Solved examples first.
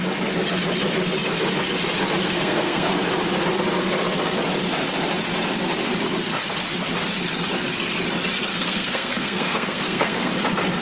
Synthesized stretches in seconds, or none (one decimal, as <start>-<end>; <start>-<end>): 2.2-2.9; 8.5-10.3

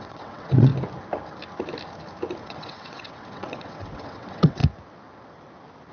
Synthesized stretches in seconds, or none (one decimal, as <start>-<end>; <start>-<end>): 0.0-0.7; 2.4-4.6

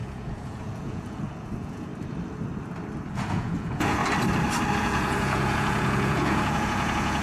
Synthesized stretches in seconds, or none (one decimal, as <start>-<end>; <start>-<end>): 0.0-1.9; 3.1-4.0; 4.7-7.2

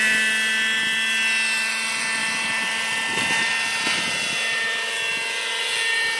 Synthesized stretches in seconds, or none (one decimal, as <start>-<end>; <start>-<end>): none

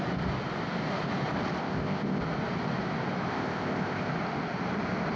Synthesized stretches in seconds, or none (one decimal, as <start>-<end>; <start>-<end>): 1.6-2.2; 3.3-4.1

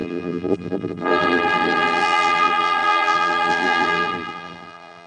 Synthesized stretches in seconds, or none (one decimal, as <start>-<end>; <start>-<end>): 0.0-5.1

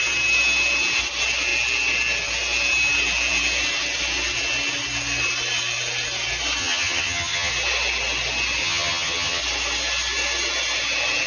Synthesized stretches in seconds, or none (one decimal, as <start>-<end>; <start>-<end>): 6.6-7.5; 8.6-9.4